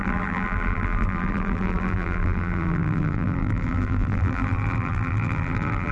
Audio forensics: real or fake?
fake